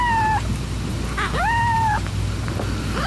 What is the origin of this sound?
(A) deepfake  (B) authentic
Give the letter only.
B